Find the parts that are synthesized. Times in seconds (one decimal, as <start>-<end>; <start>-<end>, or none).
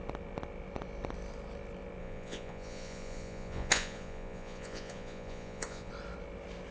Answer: 2.0-5.9